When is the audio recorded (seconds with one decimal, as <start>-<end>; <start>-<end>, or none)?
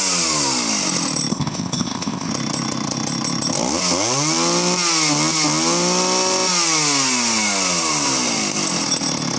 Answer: 0.0-1.3; 2.3-9.4